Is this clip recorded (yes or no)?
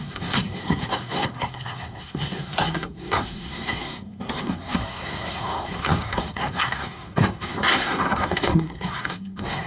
no